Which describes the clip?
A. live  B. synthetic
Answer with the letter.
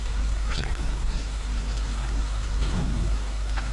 B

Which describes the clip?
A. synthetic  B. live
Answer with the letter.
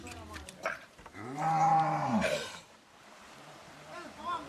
A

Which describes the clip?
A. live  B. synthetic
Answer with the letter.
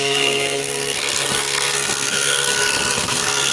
B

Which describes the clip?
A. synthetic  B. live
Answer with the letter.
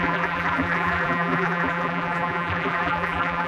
A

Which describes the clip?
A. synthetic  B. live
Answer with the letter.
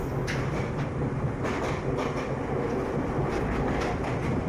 B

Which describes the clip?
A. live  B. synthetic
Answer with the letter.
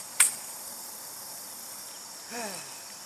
B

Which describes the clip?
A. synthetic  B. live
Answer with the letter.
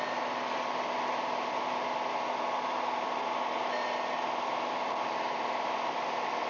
B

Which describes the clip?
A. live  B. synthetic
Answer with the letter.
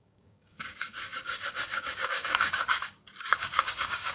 B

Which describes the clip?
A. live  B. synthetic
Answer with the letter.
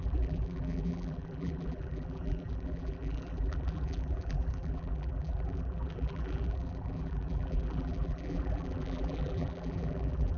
B